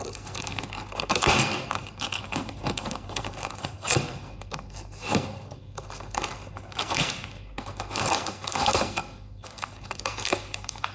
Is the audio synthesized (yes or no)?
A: yes